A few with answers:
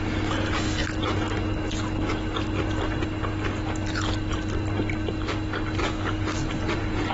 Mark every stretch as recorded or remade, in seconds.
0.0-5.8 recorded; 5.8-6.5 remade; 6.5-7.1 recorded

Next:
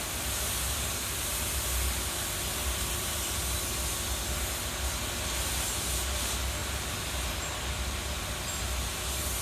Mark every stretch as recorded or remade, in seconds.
0.0-9.4 recorded

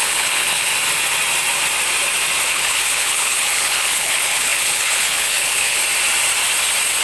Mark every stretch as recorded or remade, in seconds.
0.0-0.7 remade; 0.7-2.5 recorded; 2.5-5.8 remade; 5.8-7.0 recorded